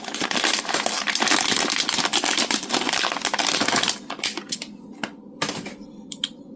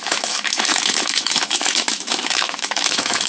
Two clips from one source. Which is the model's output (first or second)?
second